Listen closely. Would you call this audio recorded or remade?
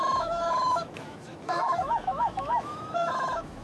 remade